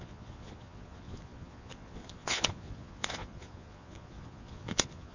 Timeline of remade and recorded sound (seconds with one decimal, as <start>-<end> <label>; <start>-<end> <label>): 0.0-5.1 remade